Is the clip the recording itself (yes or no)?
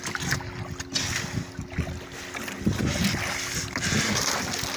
yes